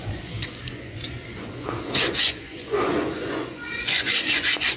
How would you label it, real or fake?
fake